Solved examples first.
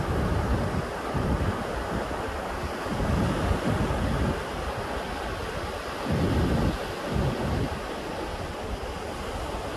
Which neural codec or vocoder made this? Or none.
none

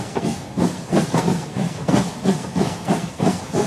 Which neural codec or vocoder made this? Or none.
codec, SNAC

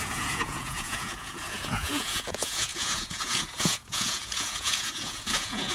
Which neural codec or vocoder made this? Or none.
vocoder, Vocos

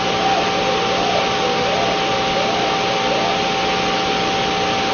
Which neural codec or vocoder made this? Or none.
none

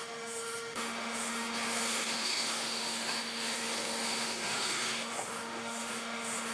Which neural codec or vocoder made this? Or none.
autoencoder, DAC-VAE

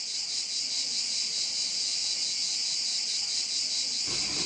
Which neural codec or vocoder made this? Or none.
none